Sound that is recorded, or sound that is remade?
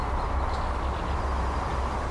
recorded